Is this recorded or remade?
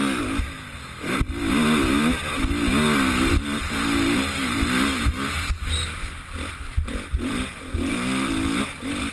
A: recorded